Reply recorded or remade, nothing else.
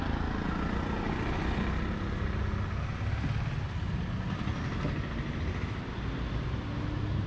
recorded